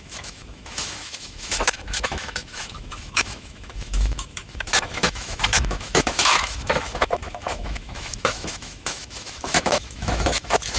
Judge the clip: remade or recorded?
remade